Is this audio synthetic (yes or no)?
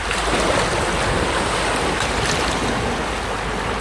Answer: no